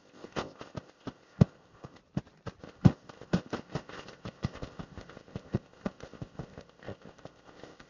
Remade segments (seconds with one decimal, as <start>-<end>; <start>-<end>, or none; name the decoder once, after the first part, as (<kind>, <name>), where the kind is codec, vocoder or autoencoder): 0.0-2.0 (codec, ZipCodec); 2.6-7.9

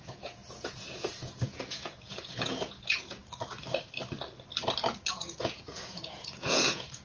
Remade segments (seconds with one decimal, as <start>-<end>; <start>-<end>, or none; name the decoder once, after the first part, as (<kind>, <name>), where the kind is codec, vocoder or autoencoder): 0.0-3.2 (vocoder, Vocos); 5.1-7.0

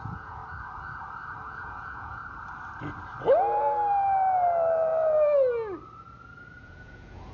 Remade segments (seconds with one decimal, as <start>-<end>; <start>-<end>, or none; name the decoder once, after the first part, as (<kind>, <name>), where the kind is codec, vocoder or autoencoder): 0.0-0.4 (vocoder, Vocos); 1.5-2.2; 6.6-7.3

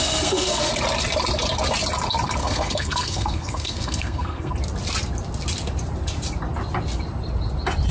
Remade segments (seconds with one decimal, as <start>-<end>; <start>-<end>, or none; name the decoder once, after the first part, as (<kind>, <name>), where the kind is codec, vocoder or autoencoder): 0.0-0.7 (codec, SNAC); 2.4-4.5

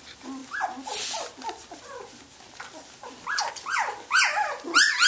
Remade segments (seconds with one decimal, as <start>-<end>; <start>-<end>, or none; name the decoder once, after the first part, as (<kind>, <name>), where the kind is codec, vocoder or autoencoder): none

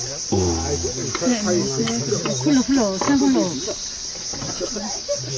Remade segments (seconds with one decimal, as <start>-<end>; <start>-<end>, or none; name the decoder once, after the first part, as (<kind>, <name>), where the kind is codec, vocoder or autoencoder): none

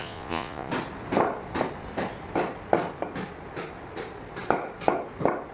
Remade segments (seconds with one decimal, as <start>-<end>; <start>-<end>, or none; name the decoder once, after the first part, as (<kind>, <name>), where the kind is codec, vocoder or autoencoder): 0.0-0.7 (vocoder, Vocos)

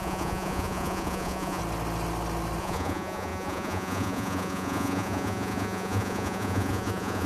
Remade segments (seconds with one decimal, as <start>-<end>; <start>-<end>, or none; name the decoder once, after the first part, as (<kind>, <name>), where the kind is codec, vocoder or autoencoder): 0.0-1.6 (vocoder, Vocos); 2.6-7.3